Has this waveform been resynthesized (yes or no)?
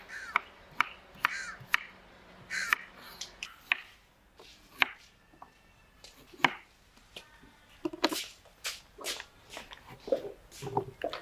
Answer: no